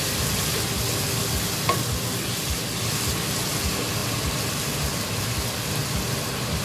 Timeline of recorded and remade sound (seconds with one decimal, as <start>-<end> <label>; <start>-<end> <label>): 0.0-6.6 recorded